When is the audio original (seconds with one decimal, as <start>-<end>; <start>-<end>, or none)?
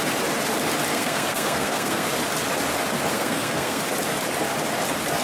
0.0-0.9; 2.1-3.1; 3.8-5.2